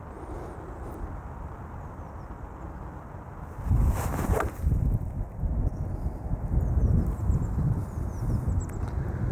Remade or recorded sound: recorded